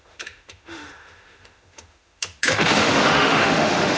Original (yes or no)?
no